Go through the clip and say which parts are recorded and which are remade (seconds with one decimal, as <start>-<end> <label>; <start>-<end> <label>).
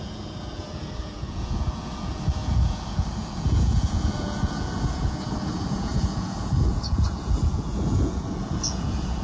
0.0-9.2 remade